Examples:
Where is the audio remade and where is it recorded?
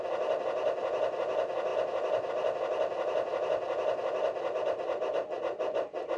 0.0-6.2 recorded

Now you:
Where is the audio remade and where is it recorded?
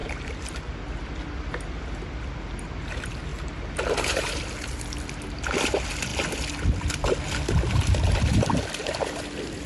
0.0-1.1 remade; 1.1-9.7 recorded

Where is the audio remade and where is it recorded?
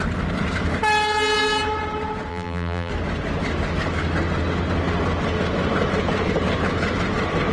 0.0-2.3 recorded; 2.3-2.9 remade; 2.9-7.5 recorded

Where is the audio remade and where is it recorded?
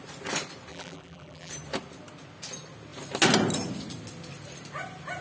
0.0-0.7 recorded; 0.7-1.5 remade; 1.5-5.2 recorded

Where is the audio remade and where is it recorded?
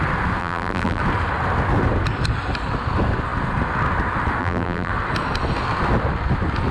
0.0-0.4 recorded; 0.4-1.0 remade; 1.0-4.4 recorded; 4.4-4.9 remade; 4.9-6.7 recorded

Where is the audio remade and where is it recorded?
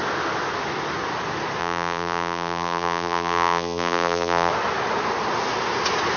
0.0-1.6 recorded; 1.6-4.5 remade; 4.5-6.2 recorded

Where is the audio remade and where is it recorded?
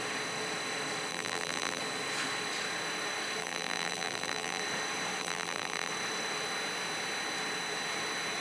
0.0-1.1 recorded; 1.1-1.8 remade; 1.8-3.4 recorded; 3.4-4.6 remade; 4.6-5.2 recorded; 5.2-5.9 remade; 5.9-8.4 recorded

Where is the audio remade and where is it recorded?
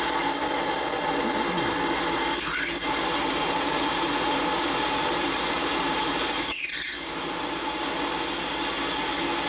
0.0-2.8 recorded; 2.8-7.6 remade; 7.6-9.5 recorded